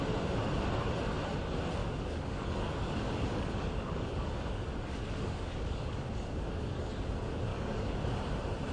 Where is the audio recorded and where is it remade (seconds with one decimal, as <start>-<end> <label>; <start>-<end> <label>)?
0.0-1.8 recorded; 1.8-6.9 remade; 6.9-7.5 recorded; 7.5-8.0 remade; 8.0-8.7 recorded